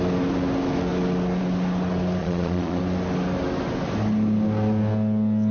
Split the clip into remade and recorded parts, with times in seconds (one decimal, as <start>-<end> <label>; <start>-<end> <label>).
0.0-2.2 recorded; 2.2-2.8 remade; 2.8-5.5 recorded